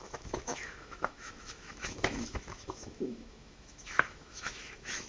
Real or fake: fake